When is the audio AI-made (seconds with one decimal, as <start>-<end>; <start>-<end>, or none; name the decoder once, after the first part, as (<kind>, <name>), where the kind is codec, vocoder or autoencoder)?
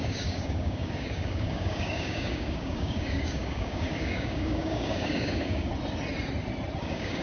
0.0-5.7 (codec, DAC); 6.8-7.2